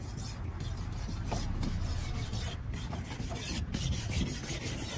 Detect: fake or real real